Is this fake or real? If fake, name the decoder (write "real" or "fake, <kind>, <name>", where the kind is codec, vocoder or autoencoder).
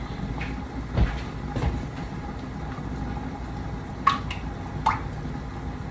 real